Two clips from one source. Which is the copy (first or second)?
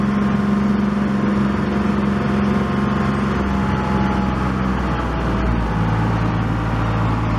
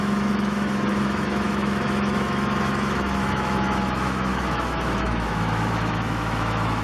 second